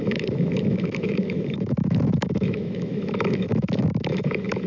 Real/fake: fake